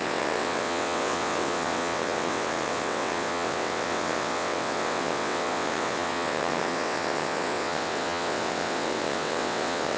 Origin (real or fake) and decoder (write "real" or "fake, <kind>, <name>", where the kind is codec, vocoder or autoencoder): fake, vocoder, WaveNeXt